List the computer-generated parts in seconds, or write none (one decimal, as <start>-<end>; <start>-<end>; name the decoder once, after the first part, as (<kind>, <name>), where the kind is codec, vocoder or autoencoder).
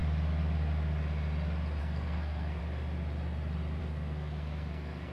1.8-2.6 (codec, SNAC); 3.8-5.1